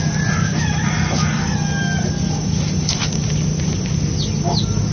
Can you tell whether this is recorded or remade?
recorded